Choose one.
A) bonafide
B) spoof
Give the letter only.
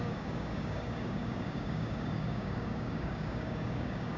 B